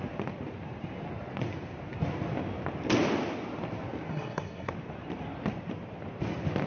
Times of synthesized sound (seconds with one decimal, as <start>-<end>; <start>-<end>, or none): 4.1-4.7